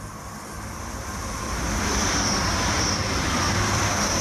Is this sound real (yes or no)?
no